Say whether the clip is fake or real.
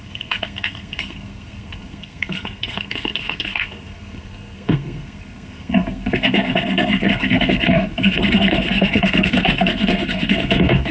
fake